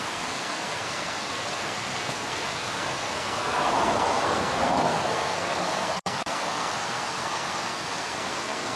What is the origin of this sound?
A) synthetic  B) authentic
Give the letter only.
A